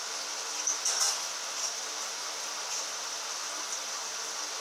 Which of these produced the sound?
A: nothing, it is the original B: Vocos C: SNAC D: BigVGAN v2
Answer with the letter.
A